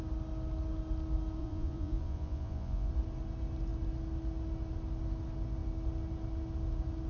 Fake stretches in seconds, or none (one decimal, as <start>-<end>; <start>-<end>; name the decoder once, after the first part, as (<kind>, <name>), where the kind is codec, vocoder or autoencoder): 1.4-2.9 (vocoder, Vocos)